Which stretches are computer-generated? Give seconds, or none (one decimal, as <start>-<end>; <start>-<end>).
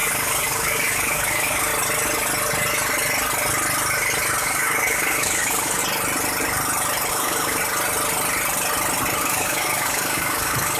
0.0-1.7; 4.4-5.8; 7.1-7.6; 9.2-10.8